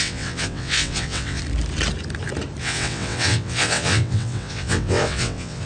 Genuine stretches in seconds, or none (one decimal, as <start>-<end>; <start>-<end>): 1.4-2.6